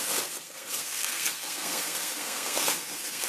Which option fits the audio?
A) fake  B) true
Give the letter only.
A